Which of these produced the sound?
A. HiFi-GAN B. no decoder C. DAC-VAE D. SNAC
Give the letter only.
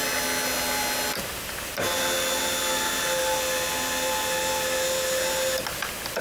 B